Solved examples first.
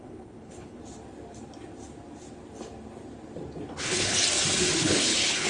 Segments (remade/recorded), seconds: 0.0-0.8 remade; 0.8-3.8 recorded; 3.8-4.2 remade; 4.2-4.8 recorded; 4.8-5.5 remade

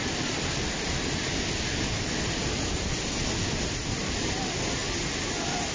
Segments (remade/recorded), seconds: 0.0-2.4 remade; 2.4-3.5 recorded; 3.5-4.8 remade; 4.8-5.3 recorded; 5.3-5.7 remade

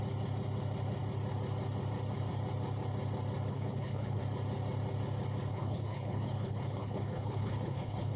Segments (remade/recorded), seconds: 0.0-3.5 recorded; 3.5-4.2 remade; 4.2-5.5 recorded; 5.5-8.2 remade

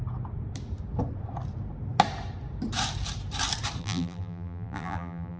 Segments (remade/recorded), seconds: 0.0-3.8 recorded; 3.8-5.4 remade

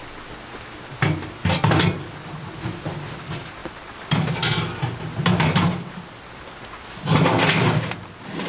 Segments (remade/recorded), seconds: 0.0-8.5 recorded